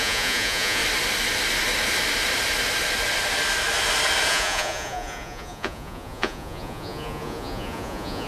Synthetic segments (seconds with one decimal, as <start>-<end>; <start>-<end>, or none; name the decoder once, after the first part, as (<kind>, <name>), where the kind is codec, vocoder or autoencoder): 0.0-0.8 (vocoder, Vocos); 4.3-8.3